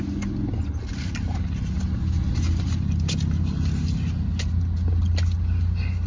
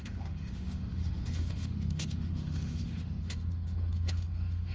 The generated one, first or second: second